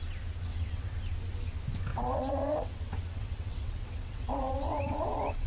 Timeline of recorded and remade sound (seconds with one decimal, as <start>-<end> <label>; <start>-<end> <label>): 0.0-0.5 recorded; 0.5-1.0 remade; 1.0-1.9 recorded; 1.9-5.5 remade